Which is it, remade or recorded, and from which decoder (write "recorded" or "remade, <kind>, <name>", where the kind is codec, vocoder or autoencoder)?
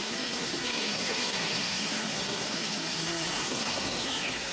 remade, codec, SNAC